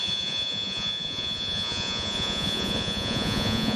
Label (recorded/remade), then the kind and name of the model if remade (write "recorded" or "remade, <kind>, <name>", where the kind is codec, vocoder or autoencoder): remade, vocoder, Vocos